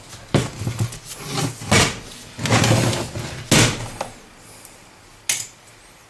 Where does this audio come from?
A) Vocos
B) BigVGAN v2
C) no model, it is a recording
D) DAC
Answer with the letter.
C